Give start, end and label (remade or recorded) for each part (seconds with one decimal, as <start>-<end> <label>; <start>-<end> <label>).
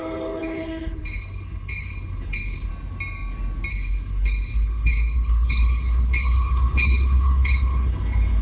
0.0-2.7 remade; 2.7-3.7 recorded; 3.7-8.4 remade